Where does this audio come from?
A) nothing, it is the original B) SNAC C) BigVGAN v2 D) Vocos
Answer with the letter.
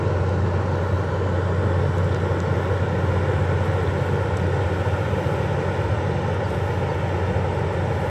A